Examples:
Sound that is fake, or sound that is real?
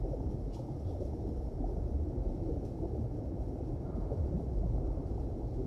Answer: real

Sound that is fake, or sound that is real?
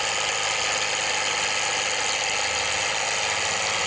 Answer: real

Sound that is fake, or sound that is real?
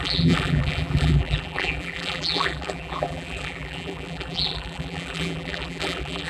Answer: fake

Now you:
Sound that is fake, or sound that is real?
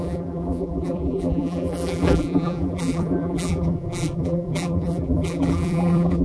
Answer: fake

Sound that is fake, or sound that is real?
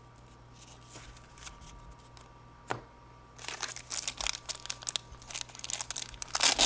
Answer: real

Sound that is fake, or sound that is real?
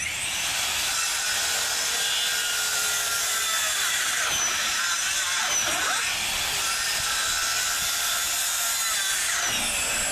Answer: fake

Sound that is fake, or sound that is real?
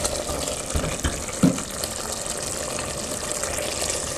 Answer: real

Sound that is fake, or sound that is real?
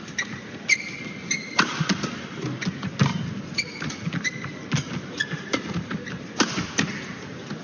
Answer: real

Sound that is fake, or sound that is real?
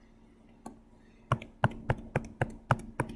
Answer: real